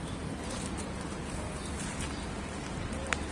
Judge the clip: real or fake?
real